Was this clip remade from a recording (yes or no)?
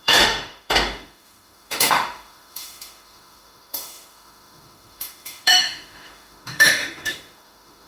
yes